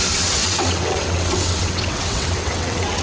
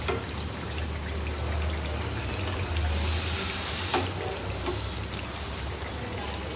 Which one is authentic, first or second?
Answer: second